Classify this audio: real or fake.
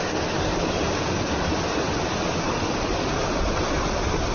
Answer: real